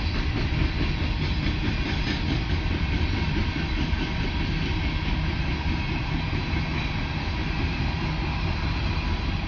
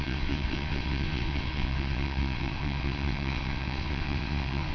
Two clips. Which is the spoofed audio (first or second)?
second